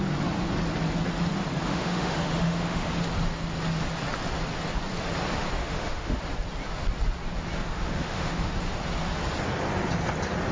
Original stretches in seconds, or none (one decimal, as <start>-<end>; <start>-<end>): 0.0-1.7; 2.9-5.6; 6.2-7.7; 8.5-10.5